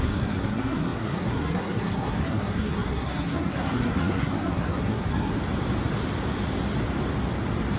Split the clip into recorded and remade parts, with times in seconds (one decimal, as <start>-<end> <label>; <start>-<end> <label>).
0.0-5.4 remade; 5.4-7.8 recorded